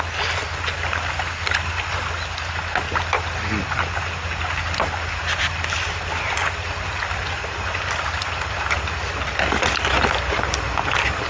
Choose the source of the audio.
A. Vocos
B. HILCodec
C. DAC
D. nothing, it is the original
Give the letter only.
D